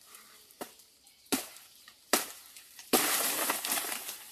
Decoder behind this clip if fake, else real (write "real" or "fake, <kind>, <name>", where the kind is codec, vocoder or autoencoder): fake, vocoder, BigVGAN v2